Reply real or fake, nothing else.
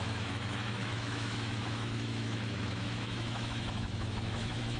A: fake